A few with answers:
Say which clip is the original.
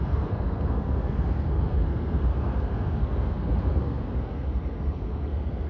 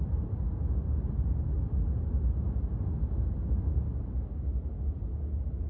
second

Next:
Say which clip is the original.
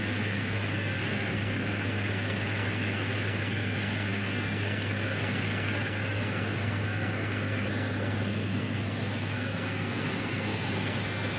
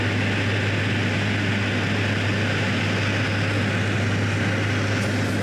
second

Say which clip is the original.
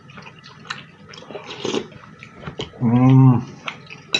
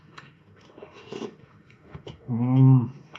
first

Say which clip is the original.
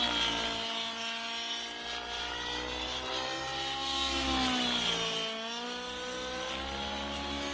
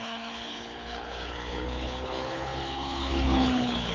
first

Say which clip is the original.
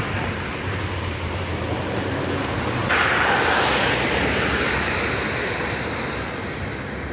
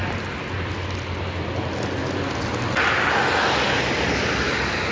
second